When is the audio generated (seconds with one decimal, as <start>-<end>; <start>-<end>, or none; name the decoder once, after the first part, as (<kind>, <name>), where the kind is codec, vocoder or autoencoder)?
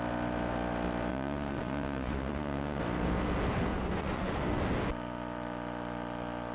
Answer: 1.1-2.8 (vocoder, Vocos); 3.7-4.4